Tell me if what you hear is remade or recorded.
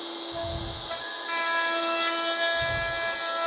recorded